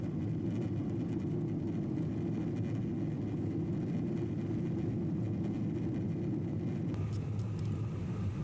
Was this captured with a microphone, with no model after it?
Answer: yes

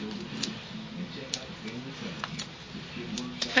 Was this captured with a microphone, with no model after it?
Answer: yes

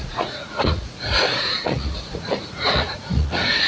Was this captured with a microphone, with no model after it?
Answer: no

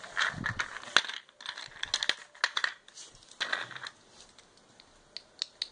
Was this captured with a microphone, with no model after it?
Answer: yes